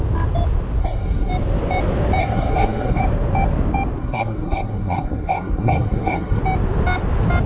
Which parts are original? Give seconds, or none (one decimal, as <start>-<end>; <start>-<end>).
0.0-0.8; 1.3-2.2; 3.0-4.0; 6.4-7.5